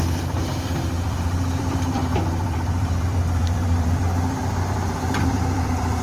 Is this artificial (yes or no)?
yes